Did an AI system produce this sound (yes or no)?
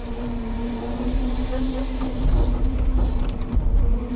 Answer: yes